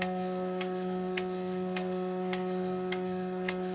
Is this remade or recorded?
remade